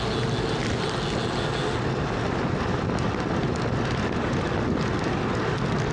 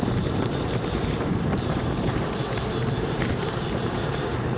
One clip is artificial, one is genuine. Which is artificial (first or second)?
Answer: second